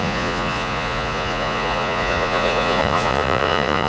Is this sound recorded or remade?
remade